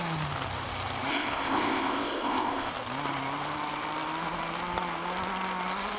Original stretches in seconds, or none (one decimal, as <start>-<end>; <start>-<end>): 0.0-1.1; 2.7-6.0